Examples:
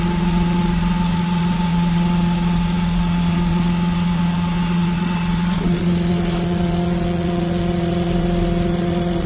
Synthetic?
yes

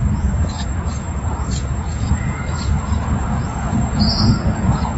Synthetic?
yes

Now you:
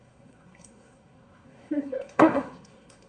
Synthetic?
yes